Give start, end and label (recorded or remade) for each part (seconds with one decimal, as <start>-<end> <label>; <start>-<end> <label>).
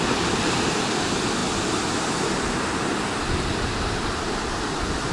0.0-5.1 recorded